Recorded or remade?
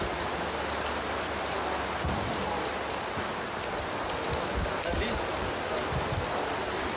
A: recorded